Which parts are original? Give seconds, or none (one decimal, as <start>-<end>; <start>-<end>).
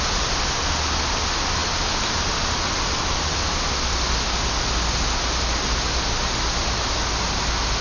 0.0-7.8